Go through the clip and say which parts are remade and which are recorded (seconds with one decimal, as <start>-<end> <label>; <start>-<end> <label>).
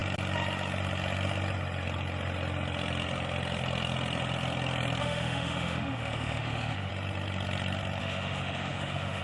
0.0-5.0 recorded; 5.0-6.9 remade; 6.9-8.0 recorded; 8.0-9.2 remade